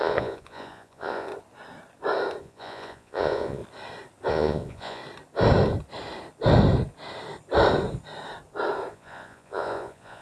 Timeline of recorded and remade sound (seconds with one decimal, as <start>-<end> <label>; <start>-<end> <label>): 0.0-1.3 remade; 1.3-2.4 recorded; 2.4-3.6 remade; 3.6-4.3 recorded; 4.3-5.0 remade; 5.0-8.9 recorded; 8.9-10.2 remade